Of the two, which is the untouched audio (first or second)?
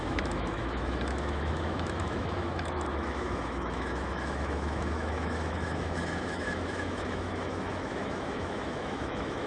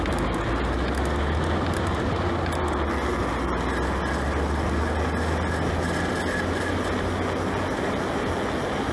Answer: second